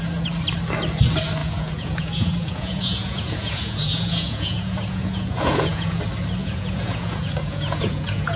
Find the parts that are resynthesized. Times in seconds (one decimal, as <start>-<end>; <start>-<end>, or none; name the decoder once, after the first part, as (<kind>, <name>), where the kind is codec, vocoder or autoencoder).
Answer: 1.4-6.0 (vocoder, Vocos); 6.4-8.4